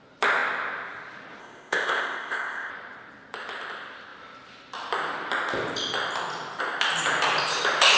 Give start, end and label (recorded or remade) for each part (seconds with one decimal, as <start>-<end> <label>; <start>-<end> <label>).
0.0-1.4 recorded; 1.4-2.7 remade; 2.7-8.0 recorded